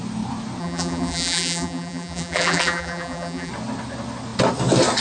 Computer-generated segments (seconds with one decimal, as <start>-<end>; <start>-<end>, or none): 0.6-3.5